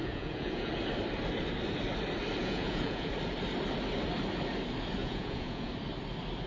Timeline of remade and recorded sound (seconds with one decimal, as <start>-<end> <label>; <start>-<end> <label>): 0.0-0.7 remade; 0.7-2.4 recorded; 2.4-3.1 remade; 3.1-5.0 recorded; 5.0-5.7 remade; 5.7-6.5 recorded

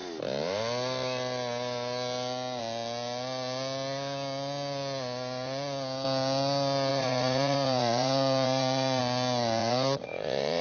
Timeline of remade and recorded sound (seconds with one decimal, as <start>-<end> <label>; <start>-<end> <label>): 0.0-6.9 recorded; 6.9-9.0 remade; 9.0-9.6 recorded; 9.6-10.6 remade